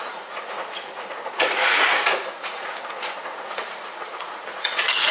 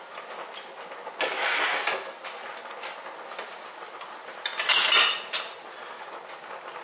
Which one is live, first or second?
second